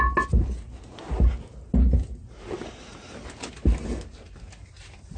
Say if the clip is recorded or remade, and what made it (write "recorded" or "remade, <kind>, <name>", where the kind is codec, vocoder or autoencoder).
recorded